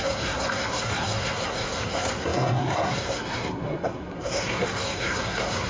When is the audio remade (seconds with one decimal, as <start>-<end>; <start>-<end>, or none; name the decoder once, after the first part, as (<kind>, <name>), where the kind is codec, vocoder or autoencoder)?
0.0-5.7 (codec, SNAC)